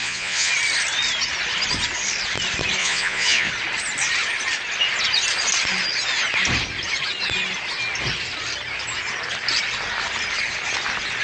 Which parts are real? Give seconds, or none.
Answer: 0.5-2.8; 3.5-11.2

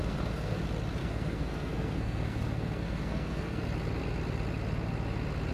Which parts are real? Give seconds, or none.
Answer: 0.6-1.0; 3.6-5.5

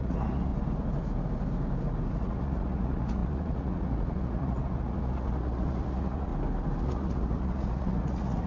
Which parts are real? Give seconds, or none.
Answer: 0.5-2.1; 6.3-6.8

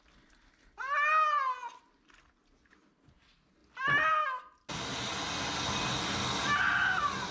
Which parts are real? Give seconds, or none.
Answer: 0.0-7.3

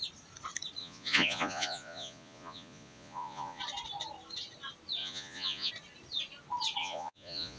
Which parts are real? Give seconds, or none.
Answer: 0.0-0.8; 3.6-5.0; 5.7-6.8

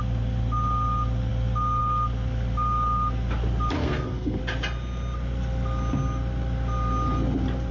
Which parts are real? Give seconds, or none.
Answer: 0.0-3.8; 4.4-7.7